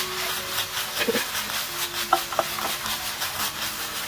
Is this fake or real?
real